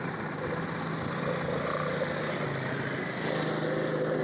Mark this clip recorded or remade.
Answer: recorded